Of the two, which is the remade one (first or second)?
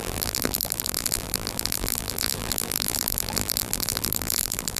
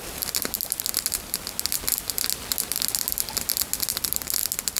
first